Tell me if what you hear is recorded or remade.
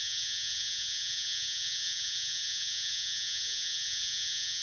remade